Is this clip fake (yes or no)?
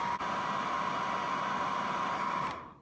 yes